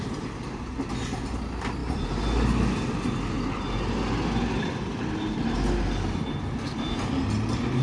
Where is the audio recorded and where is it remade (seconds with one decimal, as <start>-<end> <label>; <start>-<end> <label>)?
0.0-7.8 recorded